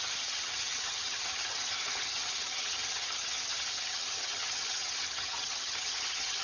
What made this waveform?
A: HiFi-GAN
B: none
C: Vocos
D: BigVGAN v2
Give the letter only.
A